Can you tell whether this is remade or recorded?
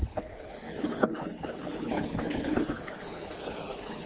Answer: remade